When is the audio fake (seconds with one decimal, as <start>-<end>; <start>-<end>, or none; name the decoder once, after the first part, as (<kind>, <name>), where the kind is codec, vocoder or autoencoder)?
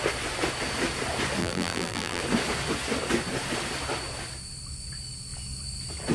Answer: 1.4-2.2 (vocoder, BigVGAN v2)